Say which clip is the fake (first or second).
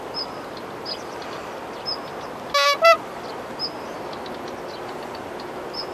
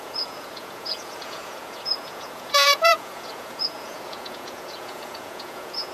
second